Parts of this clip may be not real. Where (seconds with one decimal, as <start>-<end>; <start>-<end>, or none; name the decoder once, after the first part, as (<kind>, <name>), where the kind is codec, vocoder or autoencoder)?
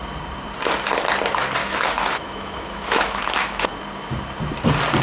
1.6-3.7 (autoencoder, DAC-VAE)